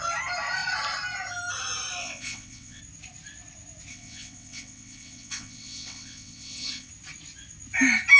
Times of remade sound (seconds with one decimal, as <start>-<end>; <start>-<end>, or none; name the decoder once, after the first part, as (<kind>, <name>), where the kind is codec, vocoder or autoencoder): 2.0-2.8 (vocoder, WaveNeXt); 3.9-6.9